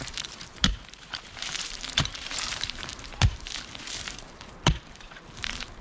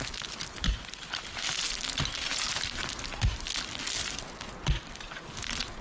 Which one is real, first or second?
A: second